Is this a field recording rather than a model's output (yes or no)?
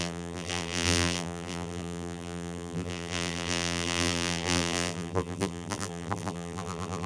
no